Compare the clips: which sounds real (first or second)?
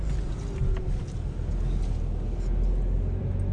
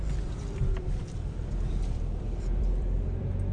first